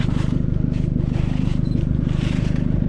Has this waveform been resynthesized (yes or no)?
yes